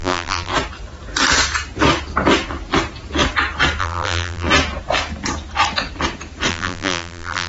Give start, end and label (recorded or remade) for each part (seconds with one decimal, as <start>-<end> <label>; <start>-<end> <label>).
0.0-0.5 remade; 0.5-3.8 recorded; 3.8-4.5 remade; 4.5-6.5 recorded; 6.5-7.5 remade